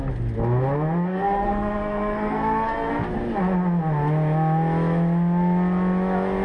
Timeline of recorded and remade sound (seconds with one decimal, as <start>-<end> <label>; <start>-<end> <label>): 0.0-1.1 recorded; 1.1-2.9 remade; 2.9-6.4 recorded